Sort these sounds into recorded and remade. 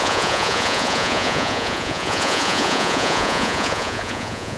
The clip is remade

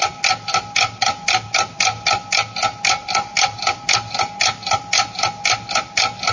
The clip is recorded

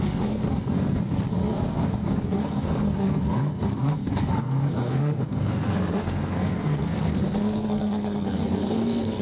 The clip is remade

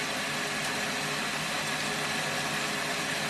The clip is recorded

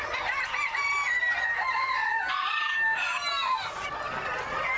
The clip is recorded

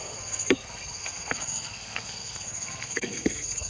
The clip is remade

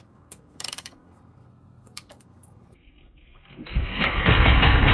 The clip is remade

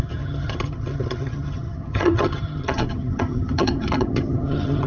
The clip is remade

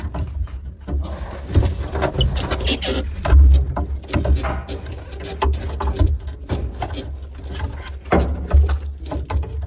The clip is recorded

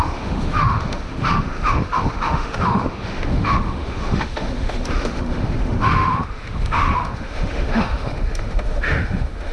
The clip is remade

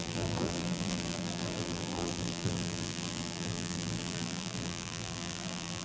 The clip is remade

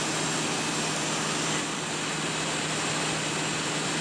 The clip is recorded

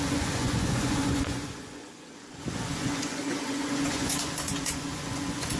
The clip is remade